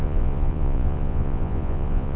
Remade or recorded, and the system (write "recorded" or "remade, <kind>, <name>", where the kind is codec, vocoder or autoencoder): remade, vocoder, Vocos